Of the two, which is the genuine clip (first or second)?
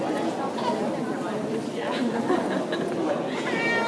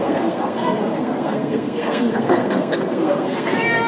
first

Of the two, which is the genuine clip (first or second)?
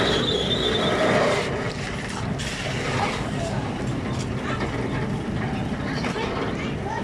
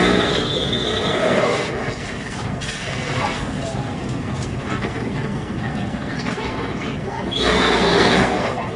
first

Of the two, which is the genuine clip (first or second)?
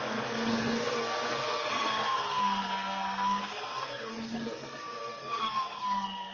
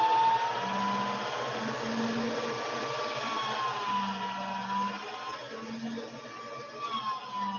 second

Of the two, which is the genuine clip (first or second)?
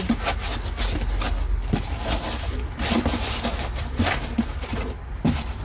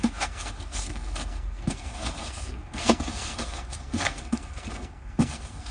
first